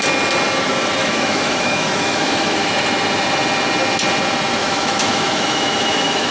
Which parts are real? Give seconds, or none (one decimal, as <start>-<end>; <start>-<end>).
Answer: 0.0-1.0; 2.7-4.6